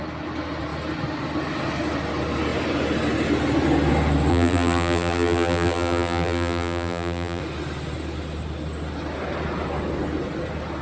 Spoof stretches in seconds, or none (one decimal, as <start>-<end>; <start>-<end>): 4.3-7.4